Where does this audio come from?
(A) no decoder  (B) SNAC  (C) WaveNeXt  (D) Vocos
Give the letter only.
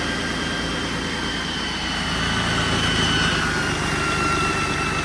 A